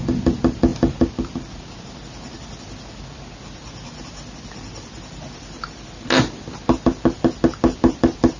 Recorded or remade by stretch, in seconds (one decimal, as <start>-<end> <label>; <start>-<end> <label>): 0.0-8.4 recorded